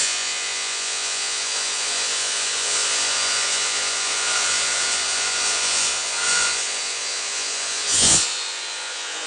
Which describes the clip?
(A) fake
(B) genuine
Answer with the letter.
A